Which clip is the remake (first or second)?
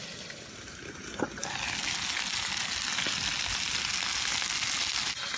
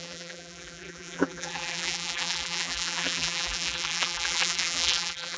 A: second